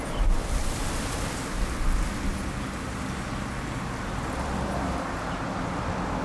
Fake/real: real